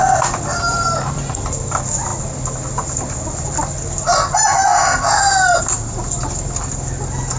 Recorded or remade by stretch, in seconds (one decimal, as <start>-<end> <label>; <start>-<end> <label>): 0.0-7.4 recorded

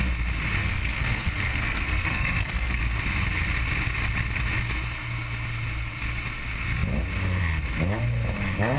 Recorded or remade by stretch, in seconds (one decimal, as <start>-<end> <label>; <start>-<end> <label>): 0.0-0.6 recorded; 0.6-2.8 remade; 2.8-8.8 recorded

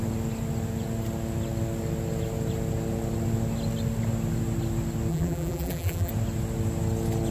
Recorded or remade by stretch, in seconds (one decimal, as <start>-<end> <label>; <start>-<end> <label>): 0.0-5.1 recorded; 5.1-6.1 remade; 6.1-7.3 recorded

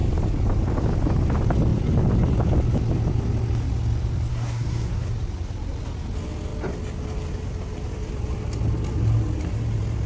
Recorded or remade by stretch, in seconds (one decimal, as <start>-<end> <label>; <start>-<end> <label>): 0.0-4.3 recorded; 4.3-5.1 remade; 5.1-10.1 recorded

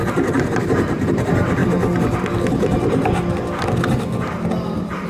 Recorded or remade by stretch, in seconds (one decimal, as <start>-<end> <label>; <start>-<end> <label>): 0.0-0.6 recorded; 0.6-1.6 remade; 1.6-5.1 recorded